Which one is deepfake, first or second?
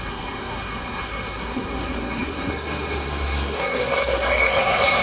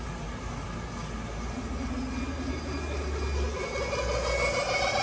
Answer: first